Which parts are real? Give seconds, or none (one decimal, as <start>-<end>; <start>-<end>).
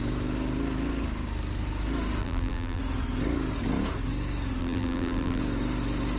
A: 0.0-2.2; 2.8-4.6; 5.4-6.2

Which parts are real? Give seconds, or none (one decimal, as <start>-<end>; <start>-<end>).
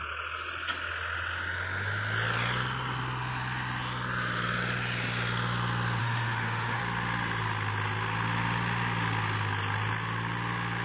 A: 0.0-6.0; 6.8-10.8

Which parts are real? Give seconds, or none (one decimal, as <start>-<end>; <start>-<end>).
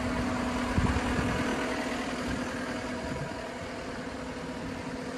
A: 0.0-5.2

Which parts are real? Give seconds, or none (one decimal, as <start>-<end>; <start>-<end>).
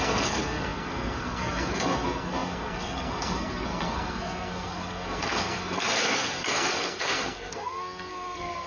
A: none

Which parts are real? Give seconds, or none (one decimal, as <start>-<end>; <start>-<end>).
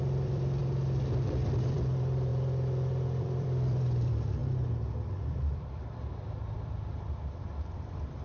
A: 2.3-3.2; 4.4-5.2